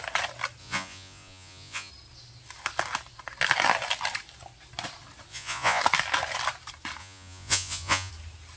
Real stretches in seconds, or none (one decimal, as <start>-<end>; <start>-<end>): 0.0-0.6; 1.9-5.3; 5.8-7.0; 8.1-8.6